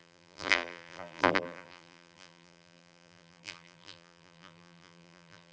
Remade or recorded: remade